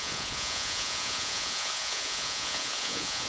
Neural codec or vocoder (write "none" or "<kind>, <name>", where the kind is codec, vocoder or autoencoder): vocoder, Vocos